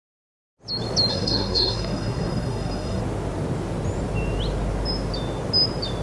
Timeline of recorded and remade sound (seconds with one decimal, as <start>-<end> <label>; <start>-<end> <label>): 0.0-1.1 recorded; 1.1-3.0 remade; 3.0-6.0 recorded